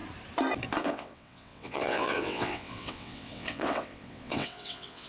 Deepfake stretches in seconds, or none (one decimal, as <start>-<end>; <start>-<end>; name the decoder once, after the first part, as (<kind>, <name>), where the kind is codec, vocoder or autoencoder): 0.8-5.1 (vocoder, WaveNeXt)